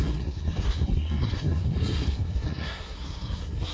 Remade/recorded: remade